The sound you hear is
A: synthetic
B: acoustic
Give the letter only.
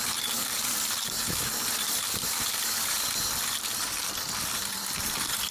A